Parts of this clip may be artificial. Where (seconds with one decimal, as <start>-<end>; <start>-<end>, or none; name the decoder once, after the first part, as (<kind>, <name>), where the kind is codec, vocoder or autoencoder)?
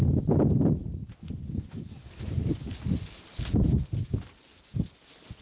none